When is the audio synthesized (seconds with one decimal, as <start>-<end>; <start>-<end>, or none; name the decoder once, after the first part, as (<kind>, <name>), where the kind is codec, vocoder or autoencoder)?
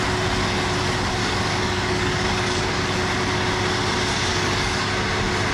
1.2-3.0 (codec, DAC); 4.3-4.9